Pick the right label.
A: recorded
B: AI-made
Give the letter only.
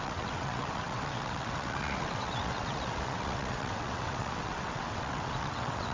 B